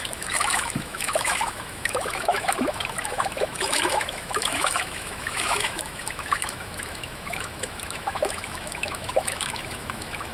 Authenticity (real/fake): fake